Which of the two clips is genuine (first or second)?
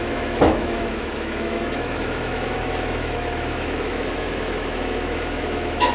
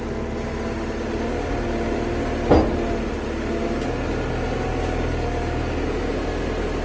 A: second